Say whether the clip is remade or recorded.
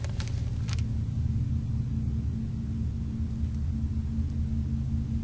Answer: recorded